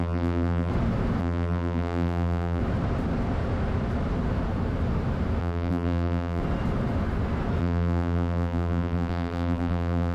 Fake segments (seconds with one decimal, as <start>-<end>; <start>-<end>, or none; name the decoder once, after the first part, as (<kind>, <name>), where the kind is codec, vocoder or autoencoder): 0.0-0.7 (vocoder, BigVGAN v2); 1.2-2.6; 5.4-6.4; 7.6-10.1